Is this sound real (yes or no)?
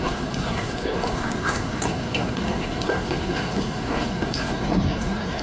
no